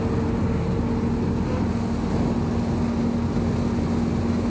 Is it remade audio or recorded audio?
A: recorded